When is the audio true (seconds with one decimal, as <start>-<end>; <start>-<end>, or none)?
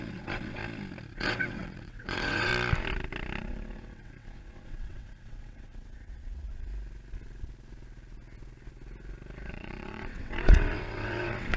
0.6-1.1; 2.5-3.4; 6.7-9.5